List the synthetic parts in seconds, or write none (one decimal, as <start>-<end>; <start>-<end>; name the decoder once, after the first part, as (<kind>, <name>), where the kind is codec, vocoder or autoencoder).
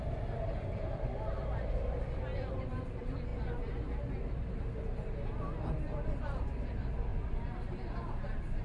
none